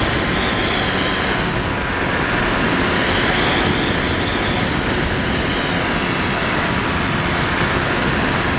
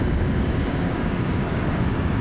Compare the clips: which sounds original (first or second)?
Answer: first